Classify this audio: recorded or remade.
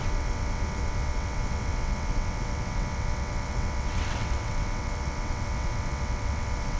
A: remade